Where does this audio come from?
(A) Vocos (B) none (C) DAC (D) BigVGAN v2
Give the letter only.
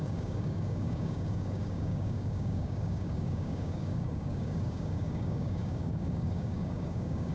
C